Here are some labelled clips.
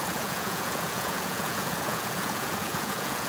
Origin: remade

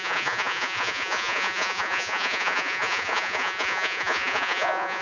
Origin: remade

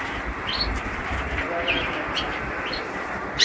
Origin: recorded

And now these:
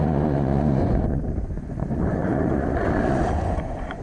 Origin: remade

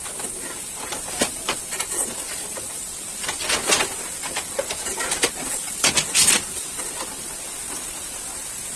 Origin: recorded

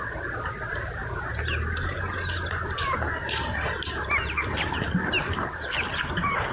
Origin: recorded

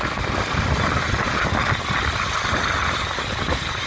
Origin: recorded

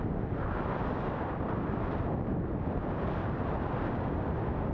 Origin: recorded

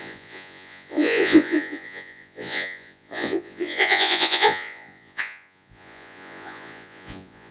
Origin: remade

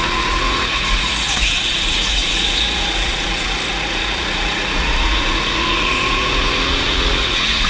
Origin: remade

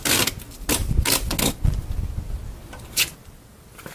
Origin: recorded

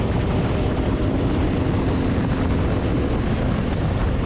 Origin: recorded